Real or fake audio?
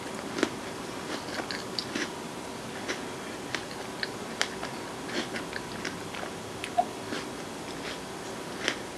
real